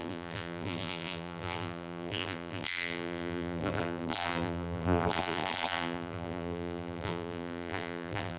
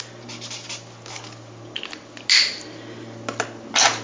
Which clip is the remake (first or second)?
first